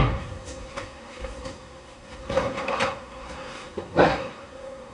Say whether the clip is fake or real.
fake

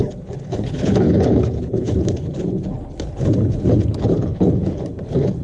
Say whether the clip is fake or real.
fake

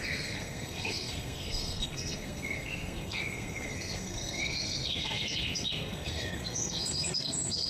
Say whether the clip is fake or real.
fake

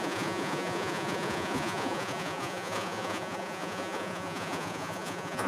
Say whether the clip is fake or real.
fake